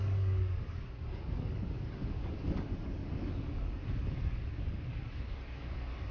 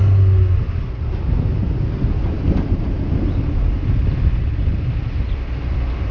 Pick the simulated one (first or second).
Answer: first